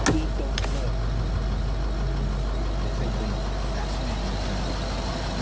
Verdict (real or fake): real